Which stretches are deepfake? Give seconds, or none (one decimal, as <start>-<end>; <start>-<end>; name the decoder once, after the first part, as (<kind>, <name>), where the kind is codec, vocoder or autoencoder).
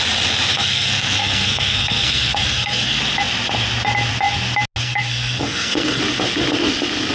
0.5-3.0 (codec, SNAC); 4.8-6.0